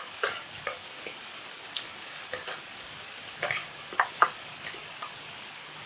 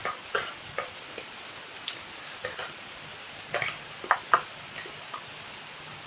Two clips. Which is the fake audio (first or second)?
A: first